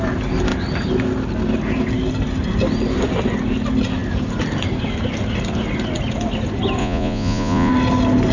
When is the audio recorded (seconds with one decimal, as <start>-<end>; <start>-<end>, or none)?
0.0-6.8; 7.7-8.3